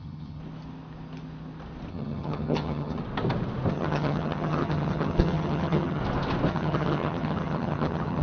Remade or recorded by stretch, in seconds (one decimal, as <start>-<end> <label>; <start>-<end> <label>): 0.0-0.4 remade; 0.4-1.9 recorded; 1.9-3.0 remade; 3.0-3.7 recorded; 3.7-6.0 remade; 6.0-6.5 recorded; 6.5-8.2 remade